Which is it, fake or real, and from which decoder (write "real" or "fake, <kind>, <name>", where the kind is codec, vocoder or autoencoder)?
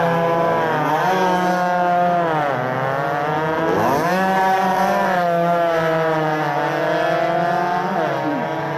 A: real